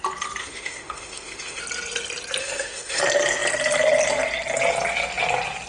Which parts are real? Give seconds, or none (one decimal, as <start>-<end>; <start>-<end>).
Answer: 0.0-0.4; 1.6-2.4; 3.0-5.7